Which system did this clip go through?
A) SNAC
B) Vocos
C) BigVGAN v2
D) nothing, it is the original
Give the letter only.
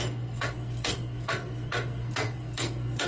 A